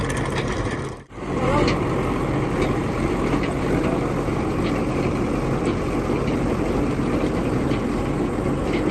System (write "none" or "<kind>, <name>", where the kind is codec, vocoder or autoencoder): none